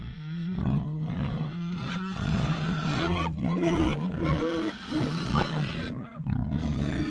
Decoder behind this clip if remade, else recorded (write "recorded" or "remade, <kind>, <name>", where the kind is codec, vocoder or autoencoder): remade, vocoder, Vocos